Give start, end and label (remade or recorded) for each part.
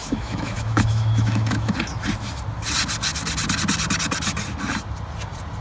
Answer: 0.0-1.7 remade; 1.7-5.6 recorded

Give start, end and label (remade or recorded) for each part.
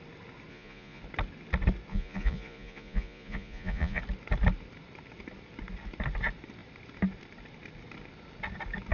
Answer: 0.0-0.5 recorded; 0.5-1.0 remade; 1.0-1.9 recorded; 1.9-4.0 remade; 4.0-8.9 recorded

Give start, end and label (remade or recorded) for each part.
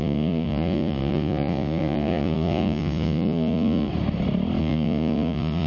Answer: 0.0-3.9 remade; 3.9-4.6 recorded; 4.6-5.7 remade